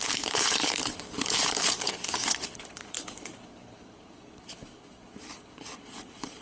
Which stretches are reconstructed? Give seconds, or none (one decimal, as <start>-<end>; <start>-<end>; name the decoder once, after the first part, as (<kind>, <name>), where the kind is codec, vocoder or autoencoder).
0.0-6.4 (codec, HILCodec)